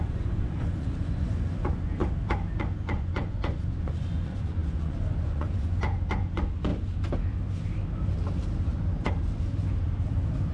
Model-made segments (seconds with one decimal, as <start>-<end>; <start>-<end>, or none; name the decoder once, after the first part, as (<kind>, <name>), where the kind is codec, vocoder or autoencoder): 0.0-2.0 (vocoder, Vocos); 2.6-6.7